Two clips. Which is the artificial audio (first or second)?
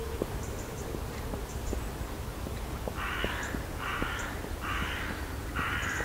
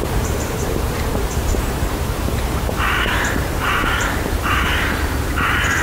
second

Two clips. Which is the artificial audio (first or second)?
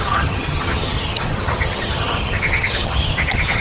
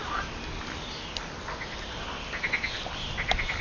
first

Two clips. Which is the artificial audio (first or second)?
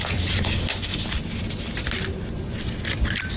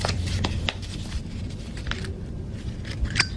second